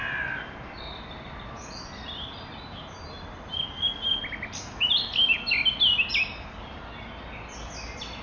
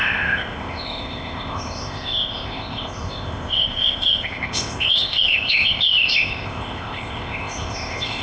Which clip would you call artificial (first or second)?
second